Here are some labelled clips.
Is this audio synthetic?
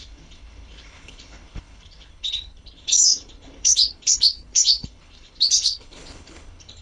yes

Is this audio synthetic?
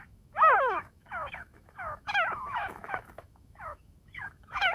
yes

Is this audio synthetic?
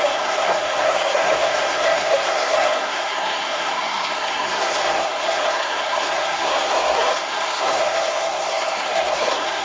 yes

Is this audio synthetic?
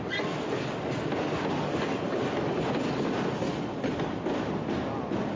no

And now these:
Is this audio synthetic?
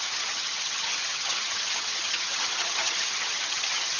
yes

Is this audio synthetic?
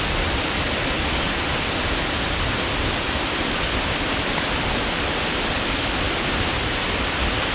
no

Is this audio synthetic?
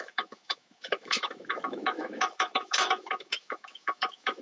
yes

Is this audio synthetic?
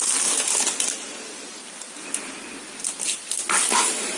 no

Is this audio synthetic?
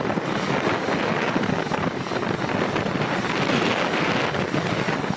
no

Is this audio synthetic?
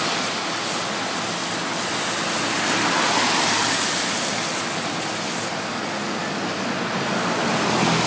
no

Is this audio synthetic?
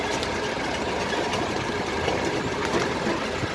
no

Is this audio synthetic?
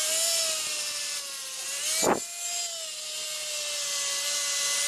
no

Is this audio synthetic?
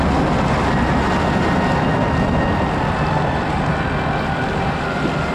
no